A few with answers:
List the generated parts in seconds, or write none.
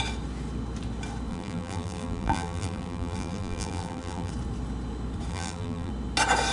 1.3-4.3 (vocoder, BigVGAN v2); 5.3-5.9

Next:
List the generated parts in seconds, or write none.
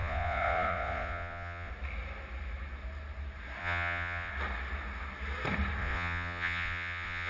0.0-1.7 (vocoder, Vocos); 3.6-4.3; 5.8-7.3